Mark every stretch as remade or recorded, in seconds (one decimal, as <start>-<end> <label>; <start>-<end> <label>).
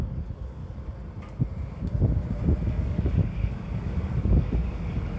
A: 0.0-0.6 remade; 0.6-2.8 recorded; 2.8-5.2 remade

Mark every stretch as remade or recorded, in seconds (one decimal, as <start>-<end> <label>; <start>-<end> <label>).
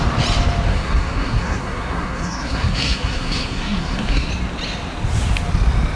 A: 0.0-0.7 recorded; 0.7-4.3 remade; 4.3-6.0 recorded